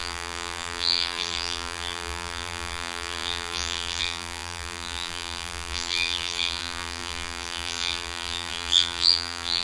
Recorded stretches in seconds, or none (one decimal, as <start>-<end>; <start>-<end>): none